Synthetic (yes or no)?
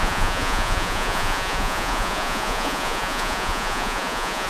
yes